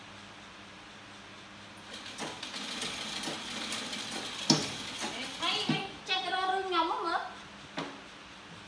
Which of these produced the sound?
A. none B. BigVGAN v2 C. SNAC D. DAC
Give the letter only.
A